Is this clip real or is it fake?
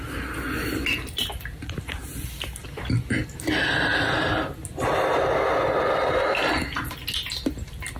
real